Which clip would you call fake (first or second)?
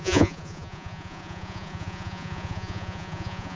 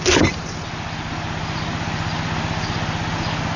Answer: first